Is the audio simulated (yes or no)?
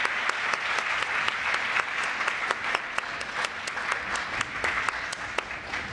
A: no